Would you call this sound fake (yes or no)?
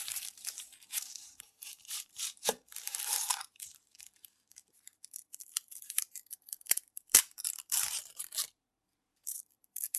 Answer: yes